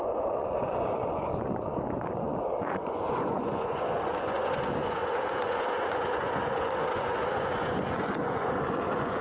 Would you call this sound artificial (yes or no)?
yes